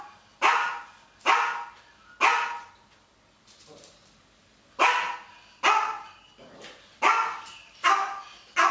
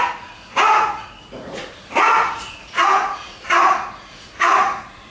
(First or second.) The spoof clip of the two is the second